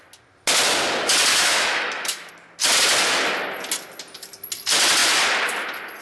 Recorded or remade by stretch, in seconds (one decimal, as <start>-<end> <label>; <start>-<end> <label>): 0.0-1.3 recorded; 1.3-2.3 remade; 2.3-6.0 recorded